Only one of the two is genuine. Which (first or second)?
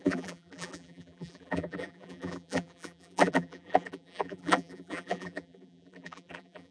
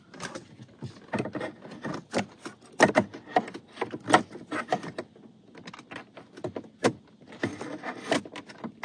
second